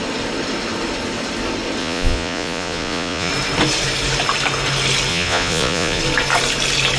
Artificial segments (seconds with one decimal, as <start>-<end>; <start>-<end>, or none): 1.8-3.3; 5.1-6.0